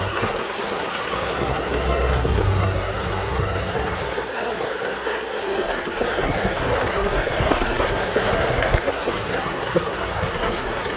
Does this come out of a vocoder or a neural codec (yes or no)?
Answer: yes